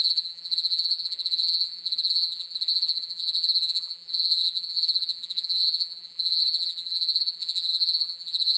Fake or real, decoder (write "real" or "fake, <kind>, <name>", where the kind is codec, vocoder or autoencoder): fake, vocoder, BigVGAN v2